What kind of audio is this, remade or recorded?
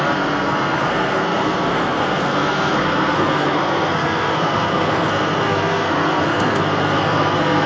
remade